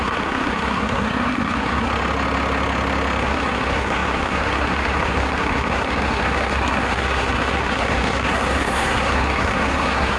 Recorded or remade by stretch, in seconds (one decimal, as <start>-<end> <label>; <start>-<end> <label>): 0.0-1.9 remade; 1.9-3.2 recorded; 3.2-10.2 remade